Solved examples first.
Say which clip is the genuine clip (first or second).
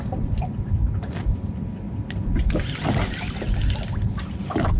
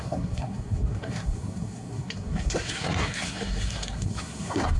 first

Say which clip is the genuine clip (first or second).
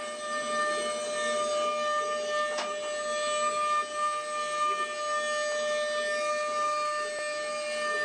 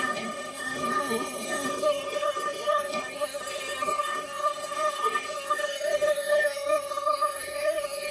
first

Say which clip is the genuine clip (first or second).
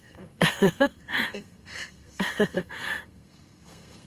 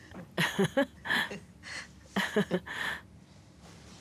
second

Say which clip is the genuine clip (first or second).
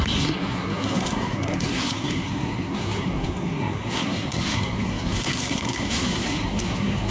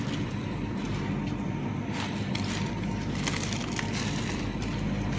second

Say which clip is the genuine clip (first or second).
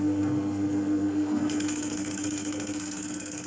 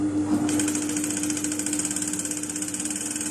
second